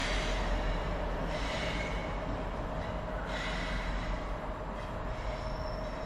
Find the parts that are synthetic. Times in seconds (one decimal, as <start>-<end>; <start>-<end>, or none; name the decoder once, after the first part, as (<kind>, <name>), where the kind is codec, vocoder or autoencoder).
0.0-2.0 (vocoder, BigVGAN v2)